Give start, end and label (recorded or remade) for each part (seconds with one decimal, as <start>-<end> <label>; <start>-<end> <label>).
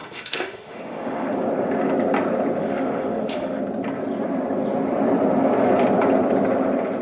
0.0-1.3 remade; 1.3-2.6 recorded; 2.6-3.6 remade; 3.6-7.0 recorded